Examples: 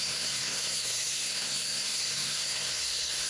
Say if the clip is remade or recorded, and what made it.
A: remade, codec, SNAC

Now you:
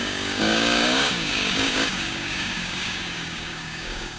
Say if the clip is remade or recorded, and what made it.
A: remade, codec, DAC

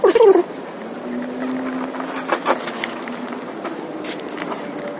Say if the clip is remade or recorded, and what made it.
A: recorded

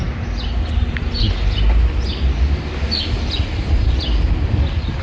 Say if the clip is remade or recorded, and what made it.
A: recorded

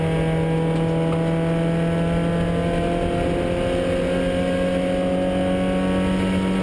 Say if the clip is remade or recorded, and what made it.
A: recorded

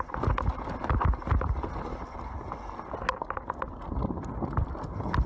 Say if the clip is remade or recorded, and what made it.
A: recorded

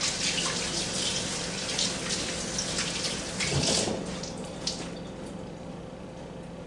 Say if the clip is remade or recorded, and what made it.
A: recorded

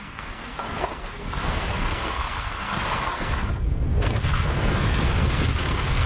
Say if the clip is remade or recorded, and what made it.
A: remade, codec, SNAC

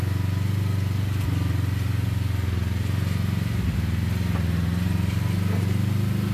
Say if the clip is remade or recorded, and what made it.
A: recorded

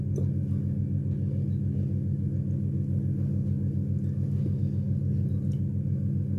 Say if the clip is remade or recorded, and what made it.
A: recorded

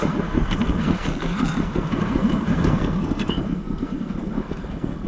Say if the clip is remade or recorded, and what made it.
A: remade, codec, SNAC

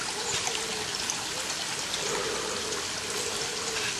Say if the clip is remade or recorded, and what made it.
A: recorded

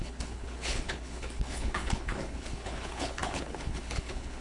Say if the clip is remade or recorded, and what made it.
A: remade, codec, HILCodec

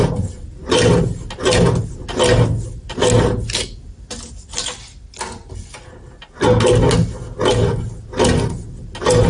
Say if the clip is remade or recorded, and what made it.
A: recorded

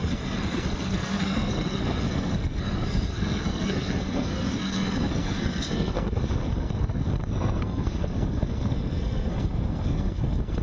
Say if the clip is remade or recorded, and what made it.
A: remade, codec, SNAC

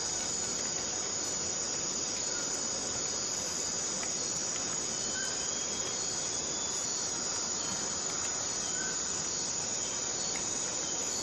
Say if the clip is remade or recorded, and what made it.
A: recorded